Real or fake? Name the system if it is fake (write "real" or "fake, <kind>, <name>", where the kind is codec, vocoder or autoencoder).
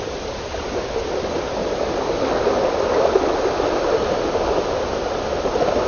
real